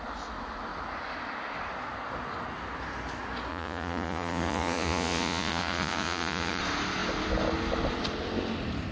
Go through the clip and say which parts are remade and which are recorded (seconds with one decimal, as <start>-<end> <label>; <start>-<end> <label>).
0.0-3.5 recorded; 3.5-6.6 remade; 6.6-8.9 recorded